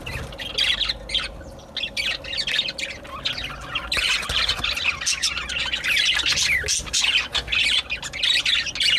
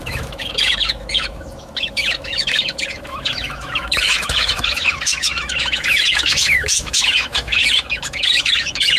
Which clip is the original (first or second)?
first